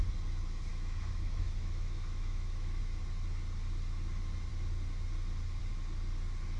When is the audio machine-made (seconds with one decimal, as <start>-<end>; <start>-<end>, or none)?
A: 0.7-2.8